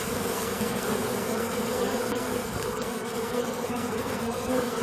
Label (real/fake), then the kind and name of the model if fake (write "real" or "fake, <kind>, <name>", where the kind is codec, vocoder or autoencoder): fake, codec, SNAC